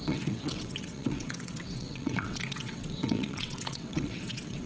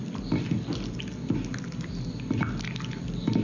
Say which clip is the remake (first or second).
first